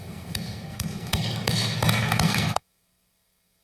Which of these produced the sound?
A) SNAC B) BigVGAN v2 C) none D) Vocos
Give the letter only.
A